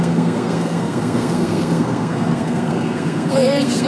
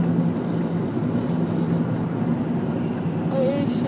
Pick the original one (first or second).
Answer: second